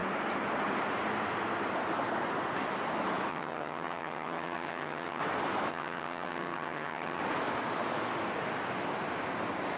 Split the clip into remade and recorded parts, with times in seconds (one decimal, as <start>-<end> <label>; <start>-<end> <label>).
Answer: 0.0-3.3 recorded; 3.3-5.2 remade; 5.2-5.7 recorded; 5.7-7.2 remade; 7.2-9.8 recorded